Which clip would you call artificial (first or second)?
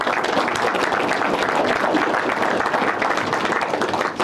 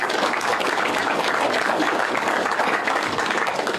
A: second